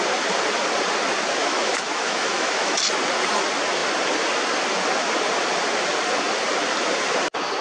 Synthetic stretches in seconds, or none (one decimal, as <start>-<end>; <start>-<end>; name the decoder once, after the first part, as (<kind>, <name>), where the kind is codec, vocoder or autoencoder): 1.4-2.8 (autoencoder, DAC-VAE)